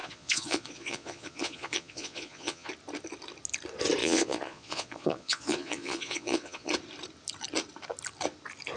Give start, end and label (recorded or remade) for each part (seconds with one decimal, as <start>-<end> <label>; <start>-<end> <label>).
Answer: 0.0-2.7 remade; 2.7-4.0 recorded; 4.0-6.7 remade; 6.7-8.8 recorded